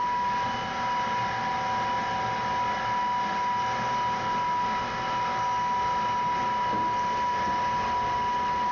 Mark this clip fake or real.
real